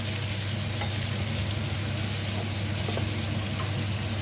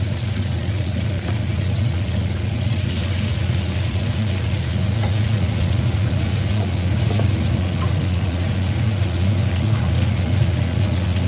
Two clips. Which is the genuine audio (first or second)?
first